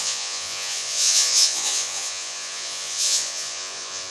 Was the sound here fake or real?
fake